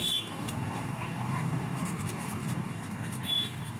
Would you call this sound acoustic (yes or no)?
no